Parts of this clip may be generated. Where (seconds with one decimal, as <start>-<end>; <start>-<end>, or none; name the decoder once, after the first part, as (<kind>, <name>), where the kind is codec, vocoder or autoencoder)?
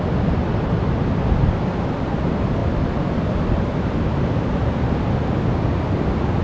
none